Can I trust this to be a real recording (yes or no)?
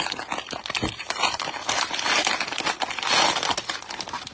yes